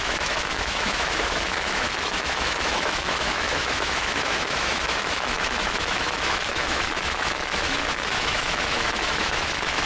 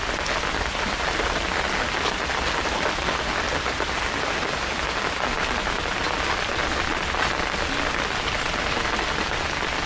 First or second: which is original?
second